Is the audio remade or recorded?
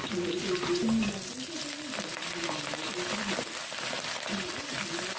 recorded